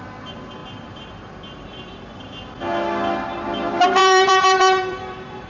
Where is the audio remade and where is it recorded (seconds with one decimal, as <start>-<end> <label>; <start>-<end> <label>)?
0.0-0.6 recorded; 0.6-1.9 remade; 1.9-4.0 recorded; 4.0-5.5 remade